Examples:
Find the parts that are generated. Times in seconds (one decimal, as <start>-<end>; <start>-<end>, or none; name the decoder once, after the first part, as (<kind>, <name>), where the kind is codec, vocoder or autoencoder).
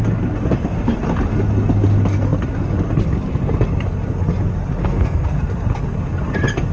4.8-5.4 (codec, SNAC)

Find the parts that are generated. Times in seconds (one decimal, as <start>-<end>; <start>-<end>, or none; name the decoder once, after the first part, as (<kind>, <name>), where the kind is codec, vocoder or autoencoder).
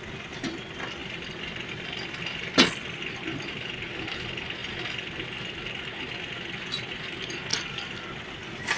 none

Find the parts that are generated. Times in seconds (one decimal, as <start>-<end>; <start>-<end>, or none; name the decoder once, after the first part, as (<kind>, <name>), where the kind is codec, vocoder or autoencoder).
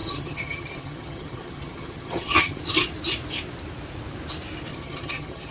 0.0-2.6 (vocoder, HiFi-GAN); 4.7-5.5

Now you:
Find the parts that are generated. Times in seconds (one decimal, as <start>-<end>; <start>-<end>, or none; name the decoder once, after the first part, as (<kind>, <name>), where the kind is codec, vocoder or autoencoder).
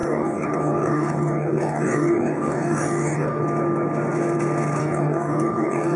0.0-3.4 (codec, DAC); 4.8-6.0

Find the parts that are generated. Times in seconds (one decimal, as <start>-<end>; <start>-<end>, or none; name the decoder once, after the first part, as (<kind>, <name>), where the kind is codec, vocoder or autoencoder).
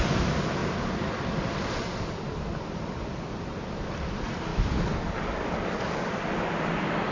4.5-6.2 (codec, DAC)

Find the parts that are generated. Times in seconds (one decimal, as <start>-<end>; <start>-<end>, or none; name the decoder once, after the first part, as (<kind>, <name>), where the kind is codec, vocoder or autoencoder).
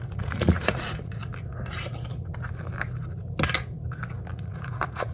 0.0-1.2 (vocoder, Vocos); 4.3-5.1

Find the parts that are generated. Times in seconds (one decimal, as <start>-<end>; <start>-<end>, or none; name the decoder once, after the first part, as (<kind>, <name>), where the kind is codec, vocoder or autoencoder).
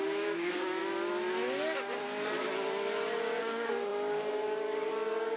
0.0-0.8 (codec, DAC); 3.4-5.4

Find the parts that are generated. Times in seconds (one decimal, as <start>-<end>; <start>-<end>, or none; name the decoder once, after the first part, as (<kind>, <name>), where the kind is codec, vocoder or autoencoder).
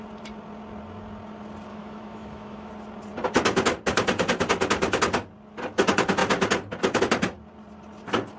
1.7-2.7 (autoencoder, DAC-VAE)